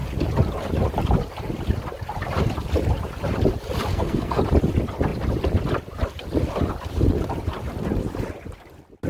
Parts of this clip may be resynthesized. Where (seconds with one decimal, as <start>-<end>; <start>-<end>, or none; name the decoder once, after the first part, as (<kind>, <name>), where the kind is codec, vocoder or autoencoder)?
3.9-4.4 (codec, SNAC)